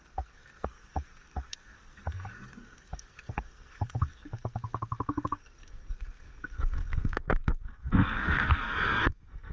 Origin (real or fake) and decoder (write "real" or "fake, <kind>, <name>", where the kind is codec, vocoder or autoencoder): fake, codec, SNAC